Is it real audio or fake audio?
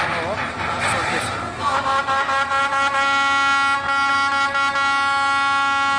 real